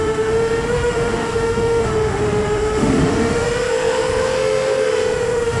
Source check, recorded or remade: remade